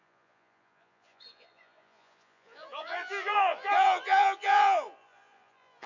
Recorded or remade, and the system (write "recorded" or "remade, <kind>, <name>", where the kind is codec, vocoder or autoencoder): remade, vocoder, Vocos